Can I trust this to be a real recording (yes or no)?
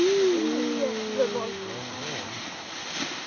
yes